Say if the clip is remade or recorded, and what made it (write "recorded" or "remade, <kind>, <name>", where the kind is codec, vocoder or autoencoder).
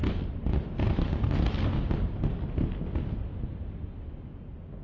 recorded